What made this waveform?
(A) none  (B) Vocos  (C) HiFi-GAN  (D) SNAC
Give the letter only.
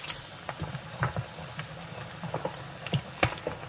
A